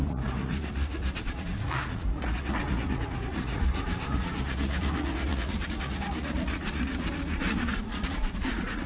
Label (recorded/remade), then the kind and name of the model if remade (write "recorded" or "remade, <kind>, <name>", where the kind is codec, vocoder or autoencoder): remade, vocoder, Vocos